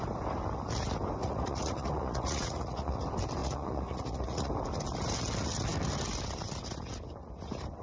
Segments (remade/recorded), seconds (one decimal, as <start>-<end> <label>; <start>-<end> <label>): 0.0-1.2 recorded; 1.2-3.0 remade; 3.0-3.4 recorded; 3.4-4.5 remade; 4.5-7.8 recorded